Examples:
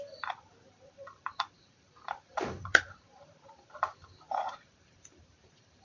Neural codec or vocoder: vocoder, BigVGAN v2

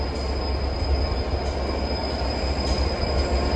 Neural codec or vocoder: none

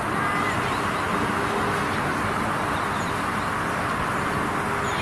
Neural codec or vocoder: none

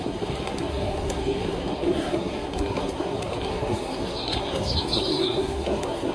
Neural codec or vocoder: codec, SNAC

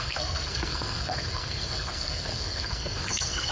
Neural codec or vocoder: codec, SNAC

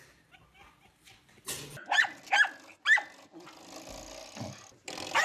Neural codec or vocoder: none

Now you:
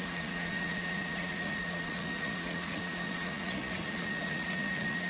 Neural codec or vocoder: vocoder, Vocos